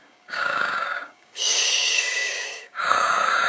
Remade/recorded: remade